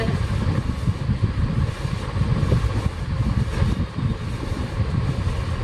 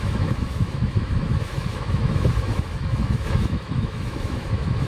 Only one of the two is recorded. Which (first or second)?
first